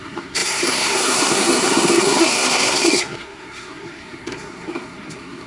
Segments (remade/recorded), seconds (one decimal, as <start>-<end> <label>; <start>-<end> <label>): 0.0-5.5 remade

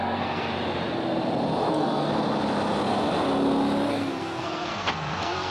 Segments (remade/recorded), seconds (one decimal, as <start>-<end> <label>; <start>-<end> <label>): 0.0-0.5 remade; 0.5-1.7 recorded; 1.7-2.1 remade; 2.1-3.9 recorded; 3.9-5.5 remade